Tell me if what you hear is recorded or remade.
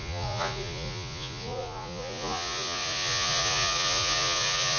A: remade